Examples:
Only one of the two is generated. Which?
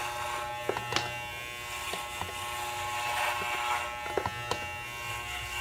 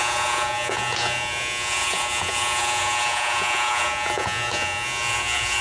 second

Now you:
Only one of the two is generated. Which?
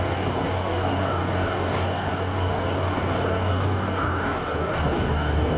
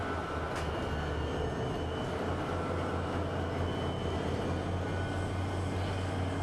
first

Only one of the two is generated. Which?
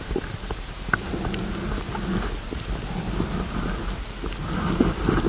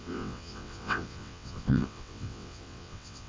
second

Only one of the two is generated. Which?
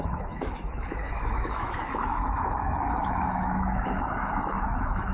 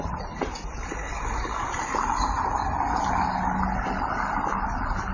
first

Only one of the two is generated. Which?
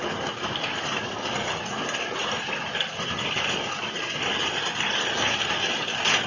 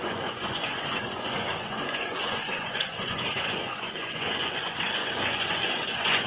second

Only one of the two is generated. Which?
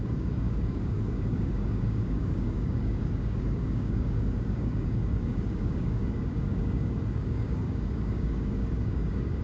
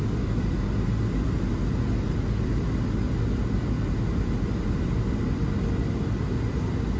first